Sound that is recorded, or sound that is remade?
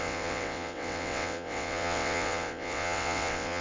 remade